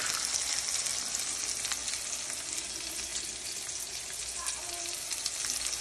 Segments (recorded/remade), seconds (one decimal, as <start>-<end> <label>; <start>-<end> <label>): 0.0-5.8 recorded